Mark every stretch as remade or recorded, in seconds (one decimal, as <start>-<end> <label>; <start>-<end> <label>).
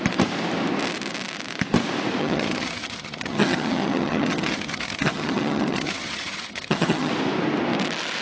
0.0-2.2 recorded; 2.2-7.1 remade; 7.1-8.2 recorded